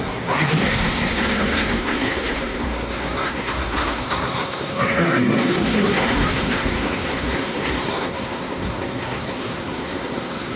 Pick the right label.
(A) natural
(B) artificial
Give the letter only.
B